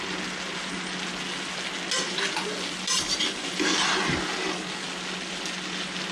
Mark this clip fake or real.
real